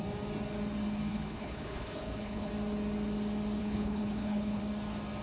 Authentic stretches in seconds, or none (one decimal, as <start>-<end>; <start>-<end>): 0.0-1.1; 2.5-3.6; 4.6-5.2